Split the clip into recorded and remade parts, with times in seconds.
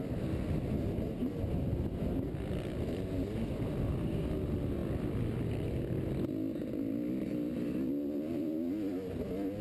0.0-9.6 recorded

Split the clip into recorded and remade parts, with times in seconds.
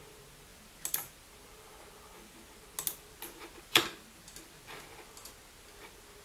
0.0-6.2 recorded